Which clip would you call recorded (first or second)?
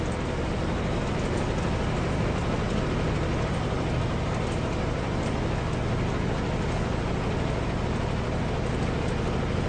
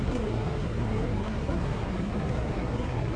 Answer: first